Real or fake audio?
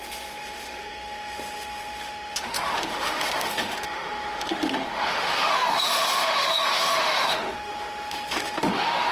fake